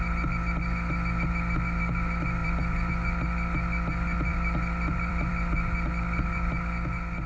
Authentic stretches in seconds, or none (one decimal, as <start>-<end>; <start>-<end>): 0.0-2.4; 2.9-4.3; 5.3-7.3